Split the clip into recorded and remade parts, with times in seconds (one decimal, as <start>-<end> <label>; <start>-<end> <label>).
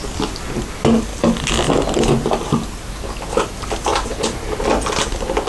0.0-5.5 recorded